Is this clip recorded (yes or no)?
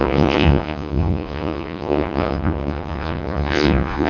no